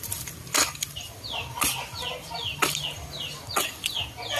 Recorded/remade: recorded